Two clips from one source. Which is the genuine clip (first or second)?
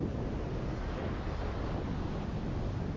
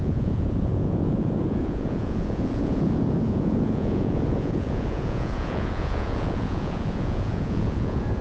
first